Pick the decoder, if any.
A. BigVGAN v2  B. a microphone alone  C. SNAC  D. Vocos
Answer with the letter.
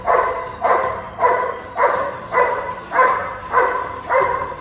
A